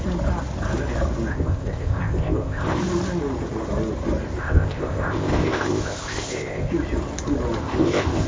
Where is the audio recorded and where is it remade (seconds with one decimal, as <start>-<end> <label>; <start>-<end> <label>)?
0.0-1.3 recorded; 1.3-2.8 remade; 2.8-4.4 recorded; 4.4-6.7 remade; 6.7-7.6 recorded; 7.6-8.3 remade